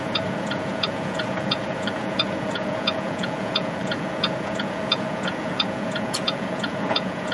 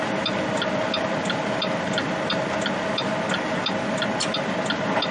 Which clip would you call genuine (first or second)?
second